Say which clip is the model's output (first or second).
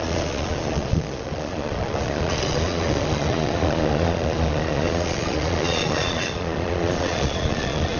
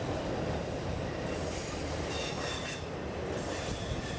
first